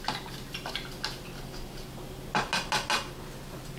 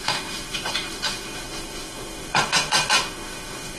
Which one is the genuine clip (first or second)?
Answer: first